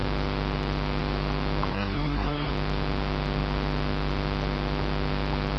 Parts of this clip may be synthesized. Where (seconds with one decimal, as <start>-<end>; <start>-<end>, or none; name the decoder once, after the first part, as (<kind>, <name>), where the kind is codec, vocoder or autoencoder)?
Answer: 1.7-2.5 (codec, SNAC)